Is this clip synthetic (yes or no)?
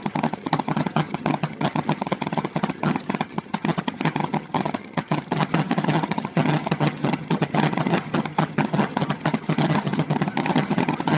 yes